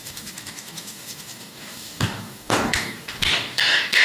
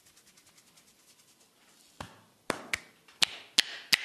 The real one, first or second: second